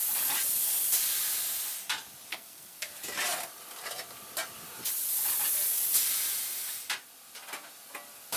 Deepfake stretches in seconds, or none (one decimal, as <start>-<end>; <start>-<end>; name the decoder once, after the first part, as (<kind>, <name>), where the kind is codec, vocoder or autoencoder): 2.3-2.9 (codec, SNAC)